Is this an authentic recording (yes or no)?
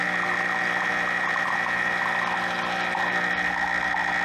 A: yes